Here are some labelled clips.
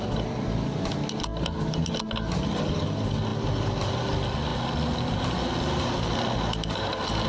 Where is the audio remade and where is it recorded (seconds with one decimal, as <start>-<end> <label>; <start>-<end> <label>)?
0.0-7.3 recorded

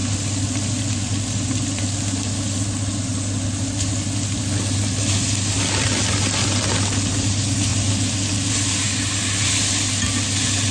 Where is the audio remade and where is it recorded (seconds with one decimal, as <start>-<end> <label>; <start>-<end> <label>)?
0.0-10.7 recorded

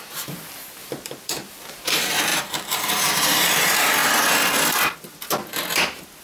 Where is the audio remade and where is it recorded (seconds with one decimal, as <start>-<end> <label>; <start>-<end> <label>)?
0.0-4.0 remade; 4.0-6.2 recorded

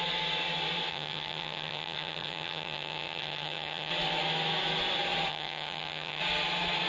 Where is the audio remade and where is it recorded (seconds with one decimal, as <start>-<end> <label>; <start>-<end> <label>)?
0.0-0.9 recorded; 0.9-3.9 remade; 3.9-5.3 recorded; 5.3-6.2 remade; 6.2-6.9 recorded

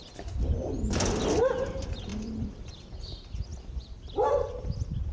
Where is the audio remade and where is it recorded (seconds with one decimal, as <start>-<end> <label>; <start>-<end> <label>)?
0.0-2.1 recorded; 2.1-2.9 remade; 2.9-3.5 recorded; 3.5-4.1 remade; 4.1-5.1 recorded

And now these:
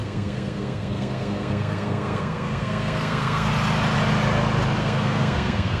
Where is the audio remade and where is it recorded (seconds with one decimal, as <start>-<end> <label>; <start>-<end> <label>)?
0.0-3.5 remade; 3.5-4.8 recorded; 4.8-5.8 remade

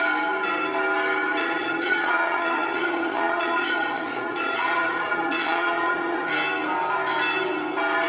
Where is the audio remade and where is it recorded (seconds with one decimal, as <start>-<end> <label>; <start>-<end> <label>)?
0.0-1.4 recorded; 1.4-6.3 remade; 6.3-8.1 recorded